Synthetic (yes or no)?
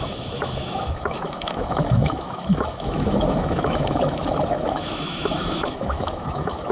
yes